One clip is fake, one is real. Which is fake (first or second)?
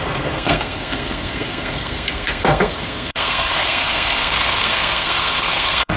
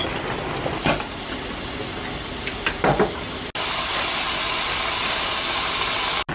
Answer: first